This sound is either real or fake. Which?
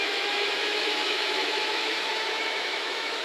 fake